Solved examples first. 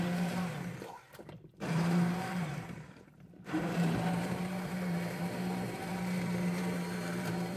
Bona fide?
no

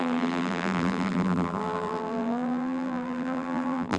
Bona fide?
no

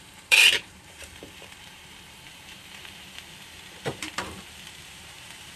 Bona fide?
no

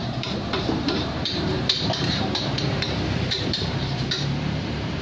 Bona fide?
no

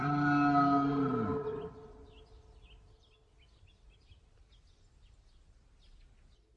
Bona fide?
yes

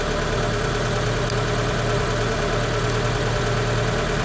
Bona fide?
yes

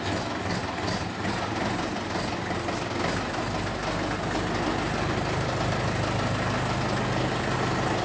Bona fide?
yes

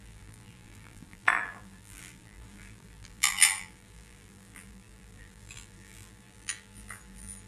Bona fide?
no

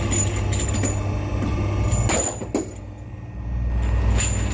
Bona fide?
yes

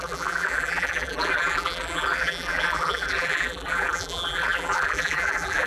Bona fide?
no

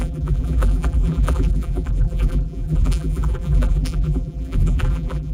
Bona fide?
no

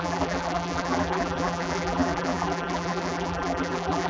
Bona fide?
no